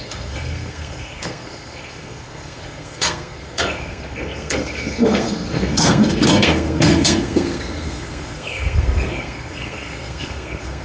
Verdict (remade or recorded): remade